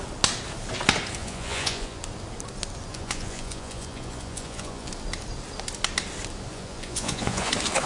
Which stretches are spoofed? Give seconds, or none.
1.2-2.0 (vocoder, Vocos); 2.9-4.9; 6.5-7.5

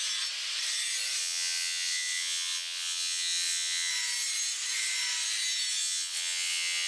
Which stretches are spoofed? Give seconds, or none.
1.2-3.9 (vocoder, WaveNeXt); 5.8-6.9

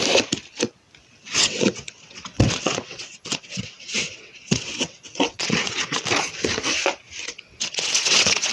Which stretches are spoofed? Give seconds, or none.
1.4-6.0 (vocoder, WaveNeXt); 7.2-8.5

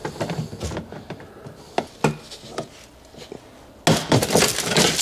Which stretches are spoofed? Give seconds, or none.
none

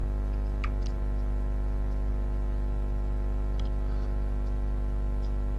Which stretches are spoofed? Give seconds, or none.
none

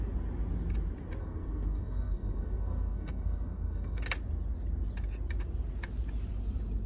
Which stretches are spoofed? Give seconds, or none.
1.2-4.0 (codec, SNAC)

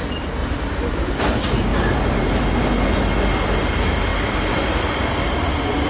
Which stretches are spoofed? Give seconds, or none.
0.4-1.2 (vocoder, BigVGAN v2); 1.7-2.7